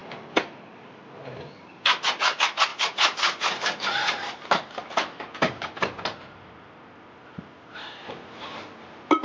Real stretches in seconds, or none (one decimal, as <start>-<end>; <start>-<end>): 0.0-9.2